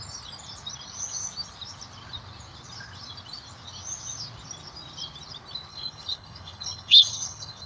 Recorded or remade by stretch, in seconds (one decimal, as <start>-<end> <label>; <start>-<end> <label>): 0.0-5.7 recorded; 5.7-7.7 remade